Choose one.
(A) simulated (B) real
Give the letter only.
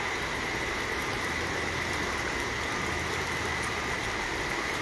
B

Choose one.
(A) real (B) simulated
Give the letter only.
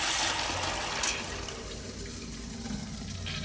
A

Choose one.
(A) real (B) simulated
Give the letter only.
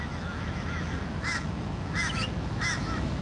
B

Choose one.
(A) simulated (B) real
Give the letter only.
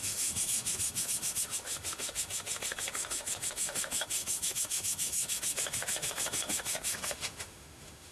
A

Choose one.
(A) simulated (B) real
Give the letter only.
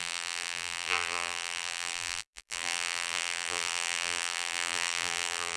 A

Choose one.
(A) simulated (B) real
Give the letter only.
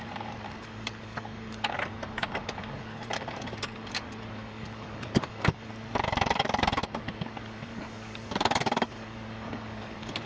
A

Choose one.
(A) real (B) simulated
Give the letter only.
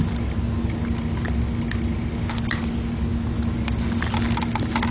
A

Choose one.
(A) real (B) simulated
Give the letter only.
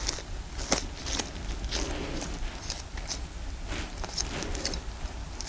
A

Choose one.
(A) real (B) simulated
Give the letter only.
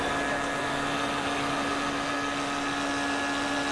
A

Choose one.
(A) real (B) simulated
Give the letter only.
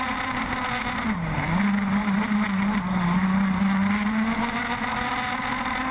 A